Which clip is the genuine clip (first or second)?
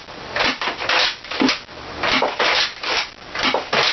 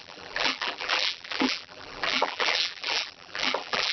first